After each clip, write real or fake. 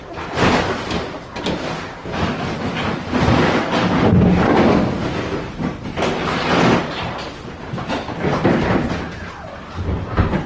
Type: real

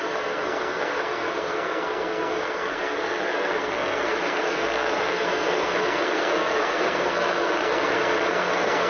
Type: fake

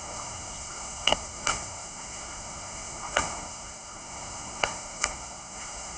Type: fake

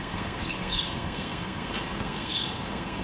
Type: fake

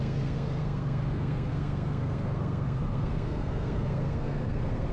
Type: fake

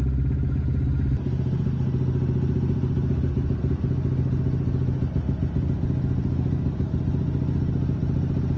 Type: real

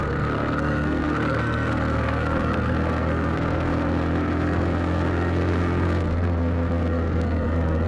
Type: fake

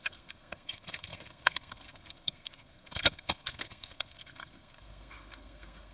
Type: fake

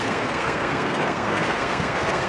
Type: fake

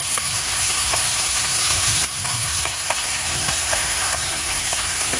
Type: fake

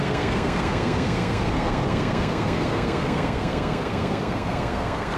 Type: fake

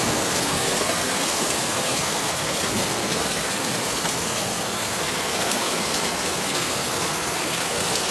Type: fake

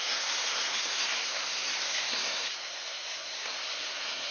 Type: fake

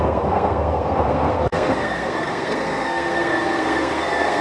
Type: fake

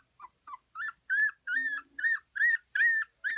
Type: real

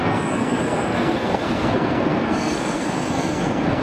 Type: fake